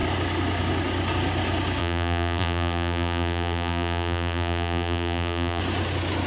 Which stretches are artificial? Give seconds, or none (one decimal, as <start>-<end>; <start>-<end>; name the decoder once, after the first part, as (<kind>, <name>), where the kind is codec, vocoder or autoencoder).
1.8-5.6 (vocoder, BigVGAN v2)